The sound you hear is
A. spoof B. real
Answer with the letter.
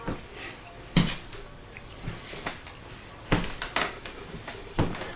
B